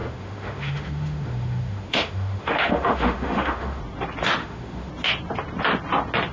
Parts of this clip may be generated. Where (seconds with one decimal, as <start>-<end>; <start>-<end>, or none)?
0.0-3.8; 4.4-4.9